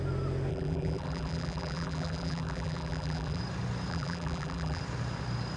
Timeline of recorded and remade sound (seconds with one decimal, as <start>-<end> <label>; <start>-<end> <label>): 0.0-0.5 recorded; 0.5-3.4 remade; 3.4-3.9 recorded; 3.9-4.8 remade; 4.8-5.6 recorded